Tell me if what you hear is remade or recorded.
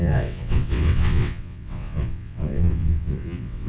remade